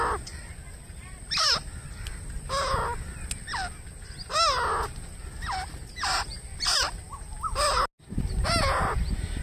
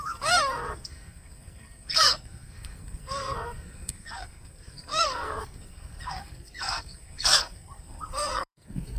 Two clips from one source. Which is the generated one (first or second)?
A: second